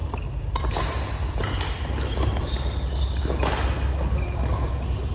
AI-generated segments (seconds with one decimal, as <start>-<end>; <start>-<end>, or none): none